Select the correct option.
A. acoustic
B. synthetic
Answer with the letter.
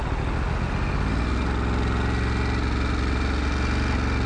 A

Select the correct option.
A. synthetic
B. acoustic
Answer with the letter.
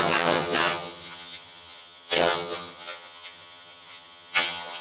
A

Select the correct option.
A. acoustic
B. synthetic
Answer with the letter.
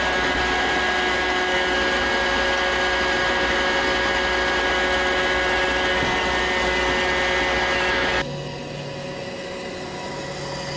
A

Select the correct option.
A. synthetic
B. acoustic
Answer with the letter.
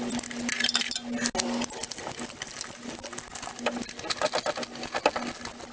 B